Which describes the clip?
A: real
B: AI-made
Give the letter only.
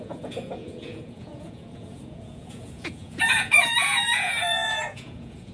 B